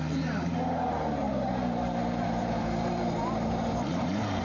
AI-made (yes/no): yes